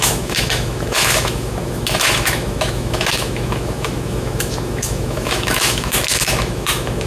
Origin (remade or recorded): remade